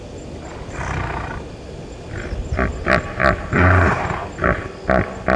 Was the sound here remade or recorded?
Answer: recorded